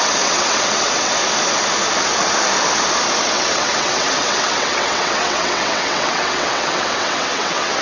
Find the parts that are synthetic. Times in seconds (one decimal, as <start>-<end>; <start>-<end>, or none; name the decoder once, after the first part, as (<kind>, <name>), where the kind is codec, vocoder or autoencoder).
0.0-1.2 (vocoder, WaveNeXt); 3.2-7.8